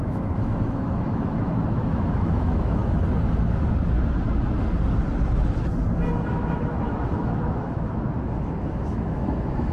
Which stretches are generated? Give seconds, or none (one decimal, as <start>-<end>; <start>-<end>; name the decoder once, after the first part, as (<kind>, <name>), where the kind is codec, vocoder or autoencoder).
0.0-2.8 (autoencoder, DAC-VAE); 6.3-9.7